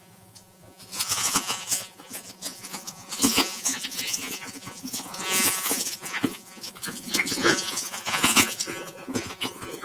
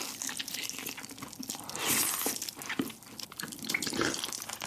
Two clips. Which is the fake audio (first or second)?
first